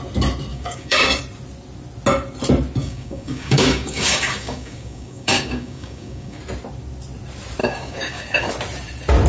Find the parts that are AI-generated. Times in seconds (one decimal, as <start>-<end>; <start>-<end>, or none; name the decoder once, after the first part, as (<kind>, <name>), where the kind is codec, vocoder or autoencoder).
0.5-1.2 (codec, DAC); 2.8-6.4; 7.6-8.5